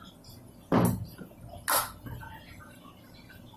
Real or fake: real